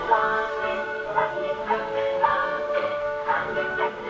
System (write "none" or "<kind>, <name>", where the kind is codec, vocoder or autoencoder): codec, SNAC